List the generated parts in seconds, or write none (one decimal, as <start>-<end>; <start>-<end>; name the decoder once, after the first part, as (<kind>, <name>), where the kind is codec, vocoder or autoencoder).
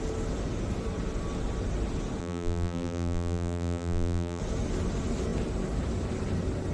2.2-4.4 (vocoder, BigVGAN v2)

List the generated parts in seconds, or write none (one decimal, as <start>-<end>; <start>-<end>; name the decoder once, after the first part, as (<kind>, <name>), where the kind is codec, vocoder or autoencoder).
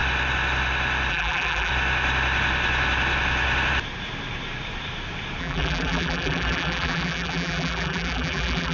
1.1-1.7 (vocoder, BigVGAN v2); 5.4-8.7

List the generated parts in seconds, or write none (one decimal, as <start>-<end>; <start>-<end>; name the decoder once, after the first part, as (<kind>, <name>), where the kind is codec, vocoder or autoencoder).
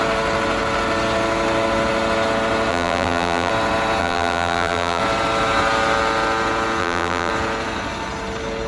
2.7-3.5 (vocoder, BigVGAN v2); 4.0-5.0; 6.8-7.3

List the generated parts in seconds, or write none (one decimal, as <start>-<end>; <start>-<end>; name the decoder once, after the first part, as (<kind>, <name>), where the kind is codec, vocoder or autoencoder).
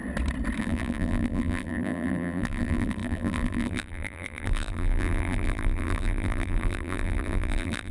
0.6-7.9 (vocoder, BigVGAN v2)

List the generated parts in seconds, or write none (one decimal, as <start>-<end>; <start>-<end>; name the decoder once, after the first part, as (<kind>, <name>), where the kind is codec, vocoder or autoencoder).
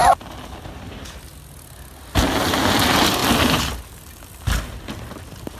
none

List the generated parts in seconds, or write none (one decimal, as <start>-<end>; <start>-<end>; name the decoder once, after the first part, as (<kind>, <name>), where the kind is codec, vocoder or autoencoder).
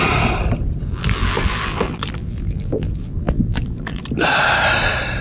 0.9-4.0 (vocoder, BigVGAN v2)